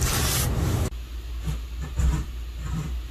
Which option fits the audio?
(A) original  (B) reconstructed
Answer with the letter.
A